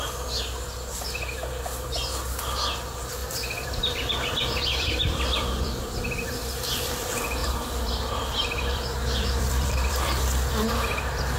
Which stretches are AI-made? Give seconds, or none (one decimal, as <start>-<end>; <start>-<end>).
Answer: 3.2-6.9; 7.4-10.5